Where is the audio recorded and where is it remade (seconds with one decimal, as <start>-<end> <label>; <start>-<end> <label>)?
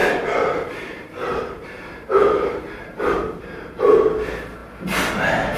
0.0-3.4 remade; 3.4-5.6 recorded